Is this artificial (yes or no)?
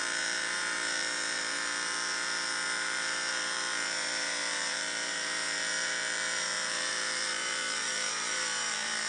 yes